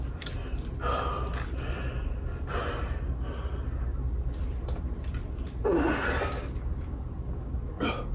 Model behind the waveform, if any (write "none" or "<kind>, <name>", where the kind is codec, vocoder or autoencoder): none